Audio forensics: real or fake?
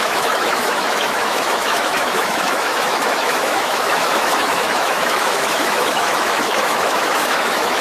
fake